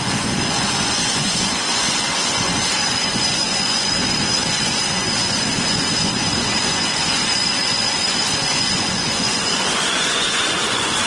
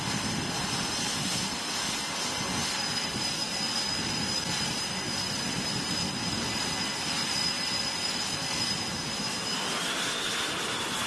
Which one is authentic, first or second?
second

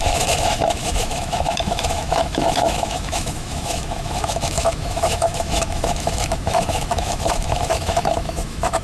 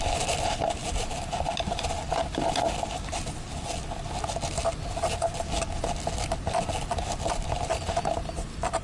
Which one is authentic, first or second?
second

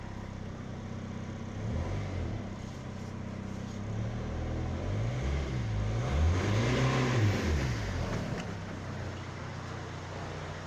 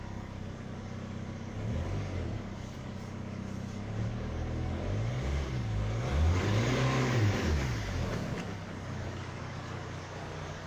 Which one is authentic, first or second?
first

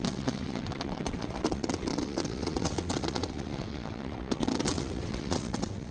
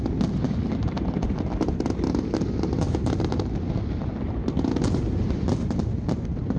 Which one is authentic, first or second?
second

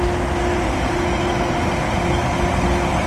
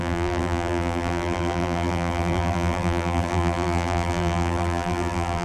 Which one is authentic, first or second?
first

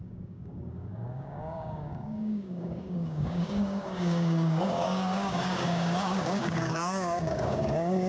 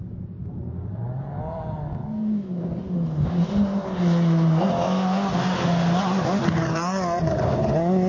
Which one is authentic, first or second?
second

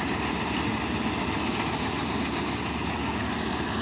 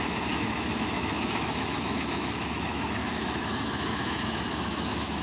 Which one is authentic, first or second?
first